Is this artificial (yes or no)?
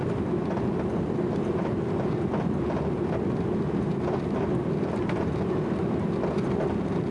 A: no